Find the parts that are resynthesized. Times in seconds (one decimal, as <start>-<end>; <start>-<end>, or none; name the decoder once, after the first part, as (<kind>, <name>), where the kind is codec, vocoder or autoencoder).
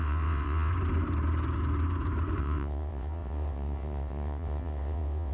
0.0-0.7 (vocoder, WaveNeXt); 2.4-5.3